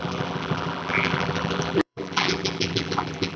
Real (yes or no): no